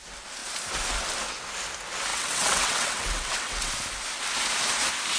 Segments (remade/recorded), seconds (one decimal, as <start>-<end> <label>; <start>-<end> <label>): 0.0-2.1 recorded; 2.1-3.7 remade; 3.7-5.2 recorded